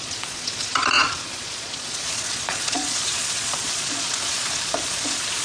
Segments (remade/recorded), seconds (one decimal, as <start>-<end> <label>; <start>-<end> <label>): 0.0-5.4 remade